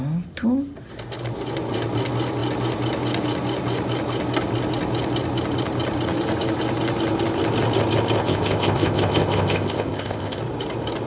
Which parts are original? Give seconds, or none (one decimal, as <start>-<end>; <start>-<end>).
0.0-8.2; 10.4-11.1

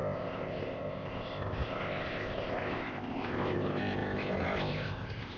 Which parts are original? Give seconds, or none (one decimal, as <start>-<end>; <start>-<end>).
none

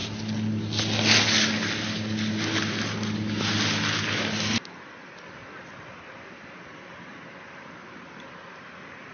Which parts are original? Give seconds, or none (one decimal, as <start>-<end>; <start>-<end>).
0.0-9.1

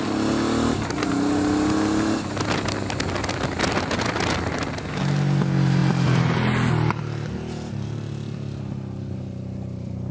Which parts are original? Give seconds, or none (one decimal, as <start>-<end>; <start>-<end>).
0.0-10.1